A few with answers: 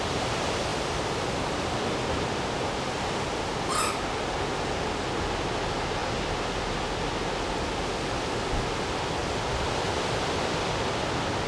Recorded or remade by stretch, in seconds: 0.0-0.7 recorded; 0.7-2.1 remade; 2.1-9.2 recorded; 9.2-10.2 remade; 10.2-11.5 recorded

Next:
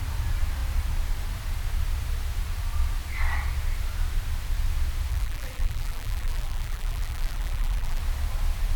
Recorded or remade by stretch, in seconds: 0.0-5.1 recorded; 5.1-8.0 remade; 8.0-8.8 recorded

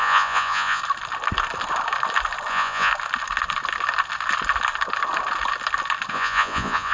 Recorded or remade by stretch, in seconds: 0.0-0.8 remade; 0.8-2.5 recorded; 2.5-2.9 remade; 2.9-6.1 recorded; 6.1-6.9 remade